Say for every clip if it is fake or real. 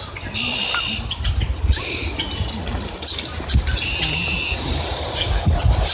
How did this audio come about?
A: real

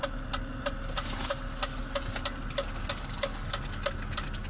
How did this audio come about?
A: real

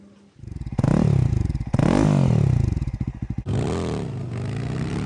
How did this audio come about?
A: real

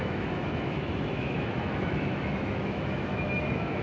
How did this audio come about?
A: fake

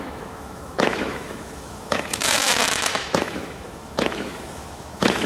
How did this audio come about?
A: fake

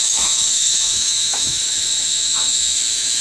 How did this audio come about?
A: fake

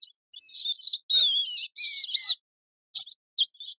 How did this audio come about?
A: real